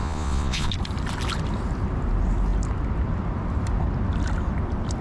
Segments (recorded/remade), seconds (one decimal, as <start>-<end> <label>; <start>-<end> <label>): 0.0-0.7 remade; 0.7-5.0 recorded